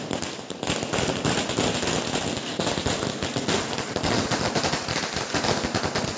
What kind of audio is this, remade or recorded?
recorded